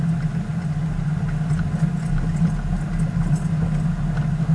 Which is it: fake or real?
real